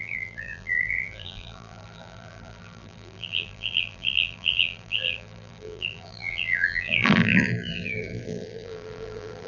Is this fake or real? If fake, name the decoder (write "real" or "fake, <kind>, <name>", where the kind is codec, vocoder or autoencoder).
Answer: fake, vocoder, BigVGAN v2